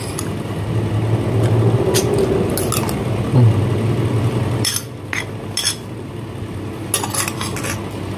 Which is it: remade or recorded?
recorded